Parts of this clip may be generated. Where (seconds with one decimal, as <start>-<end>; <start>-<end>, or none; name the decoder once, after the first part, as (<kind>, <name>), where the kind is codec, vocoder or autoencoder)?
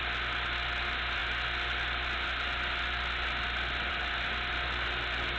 none